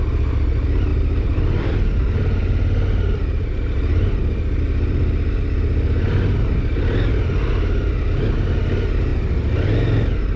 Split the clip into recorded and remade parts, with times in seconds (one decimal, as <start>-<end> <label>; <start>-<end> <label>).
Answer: 0.0-0.9 recorded; 0.9-4.6 remade; 4.6-10.4 recorded